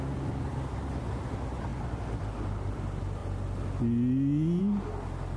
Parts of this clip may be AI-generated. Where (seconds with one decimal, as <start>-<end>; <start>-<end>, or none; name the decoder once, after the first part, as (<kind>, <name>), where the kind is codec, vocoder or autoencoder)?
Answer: none